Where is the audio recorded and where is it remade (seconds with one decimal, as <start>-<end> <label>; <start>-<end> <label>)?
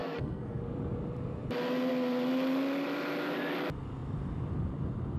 0.0-0.6 remade; 0.6-5.2 recorded